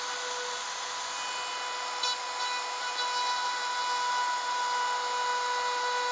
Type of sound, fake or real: real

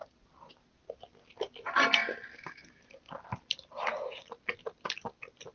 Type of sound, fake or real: real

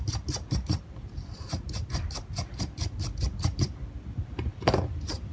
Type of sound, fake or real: real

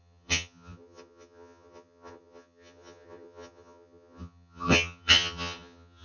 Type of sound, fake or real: fake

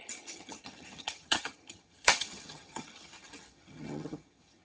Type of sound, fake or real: fake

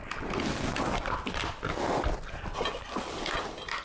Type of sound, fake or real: real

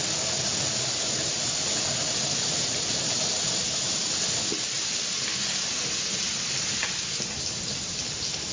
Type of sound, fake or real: real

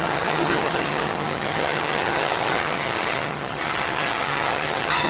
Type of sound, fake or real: fake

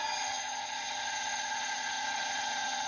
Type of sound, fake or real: fake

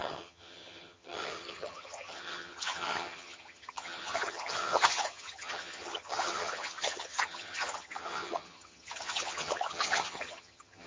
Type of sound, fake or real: fake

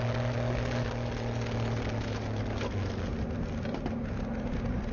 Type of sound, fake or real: real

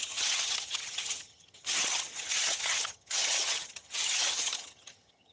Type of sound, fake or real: fake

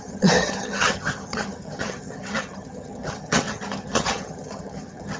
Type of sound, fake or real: fake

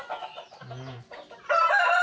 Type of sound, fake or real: real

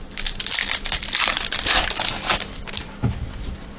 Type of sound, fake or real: real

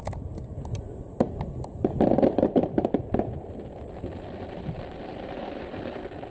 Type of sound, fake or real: real